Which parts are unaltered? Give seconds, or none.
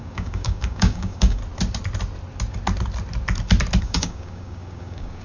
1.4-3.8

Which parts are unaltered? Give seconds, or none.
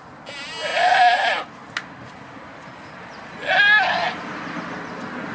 0.0-5.3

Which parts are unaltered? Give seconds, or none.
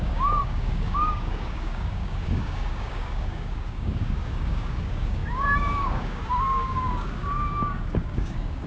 none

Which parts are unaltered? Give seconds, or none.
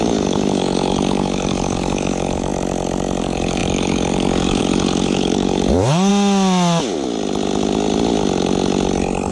2.5-3.2; 6.1-9.3